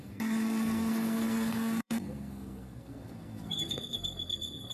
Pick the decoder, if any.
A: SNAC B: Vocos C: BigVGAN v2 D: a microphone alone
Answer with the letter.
A